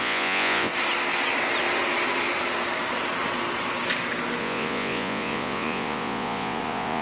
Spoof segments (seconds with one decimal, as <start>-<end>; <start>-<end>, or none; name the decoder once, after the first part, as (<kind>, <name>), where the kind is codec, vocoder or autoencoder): 0.0-0.7 (vocoder, Vocos); 4.4-7.0